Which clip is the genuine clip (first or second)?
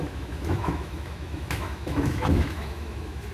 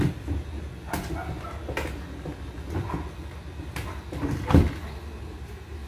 second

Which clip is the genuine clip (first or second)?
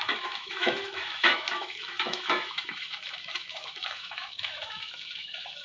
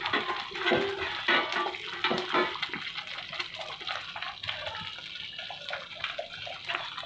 second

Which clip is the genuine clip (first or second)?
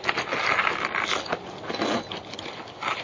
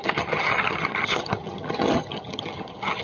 first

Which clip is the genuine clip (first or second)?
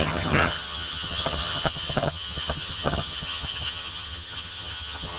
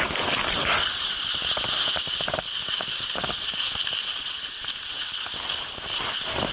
second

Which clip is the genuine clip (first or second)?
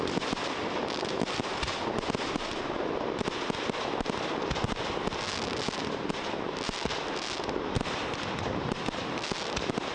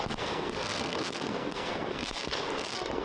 first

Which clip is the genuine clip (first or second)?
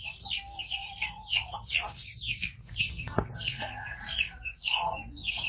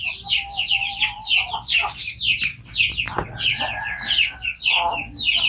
second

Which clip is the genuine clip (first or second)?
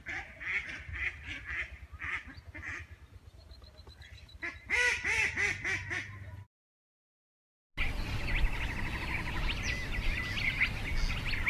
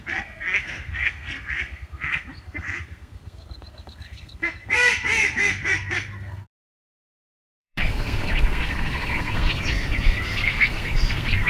first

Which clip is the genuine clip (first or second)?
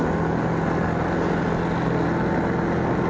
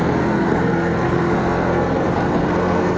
first